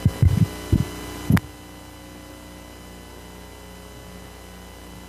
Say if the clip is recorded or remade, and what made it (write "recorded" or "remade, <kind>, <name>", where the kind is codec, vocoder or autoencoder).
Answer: recorded